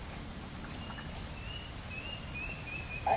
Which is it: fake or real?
real